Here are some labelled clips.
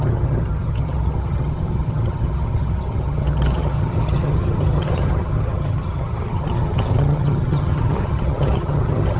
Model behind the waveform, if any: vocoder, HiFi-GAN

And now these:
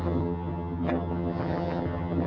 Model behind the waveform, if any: vocoder, HiFi-GAN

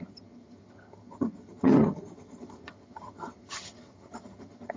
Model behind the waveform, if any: vocoder, HiFi-GAN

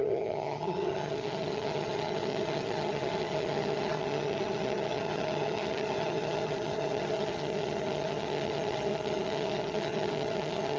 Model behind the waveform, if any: vocoder, HiFi-GAN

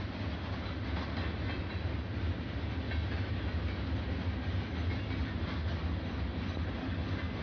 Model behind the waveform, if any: none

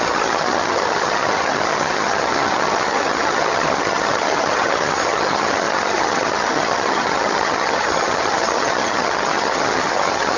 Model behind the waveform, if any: vocoder, HiFi-GAN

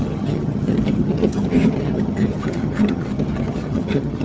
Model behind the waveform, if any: vocoder, HiFi-GAN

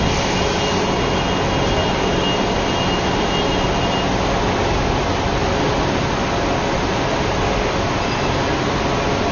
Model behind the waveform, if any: none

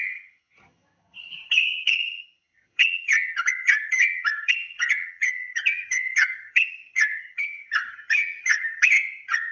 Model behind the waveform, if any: vocoder, HiFi-GAN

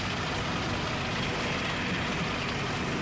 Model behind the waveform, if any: none